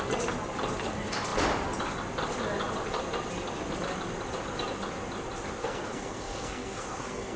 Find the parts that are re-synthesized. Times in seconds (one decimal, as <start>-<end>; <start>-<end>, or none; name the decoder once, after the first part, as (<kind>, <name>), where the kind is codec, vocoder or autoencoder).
5.6-7.4 (codec, SNAC)